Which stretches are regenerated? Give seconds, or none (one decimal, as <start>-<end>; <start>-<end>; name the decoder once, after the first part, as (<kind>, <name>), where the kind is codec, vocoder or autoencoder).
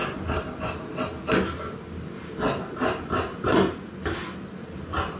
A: none